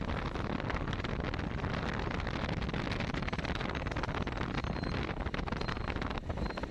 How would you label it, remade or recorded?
recorded